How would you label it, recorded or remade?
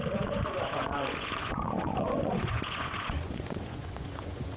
remade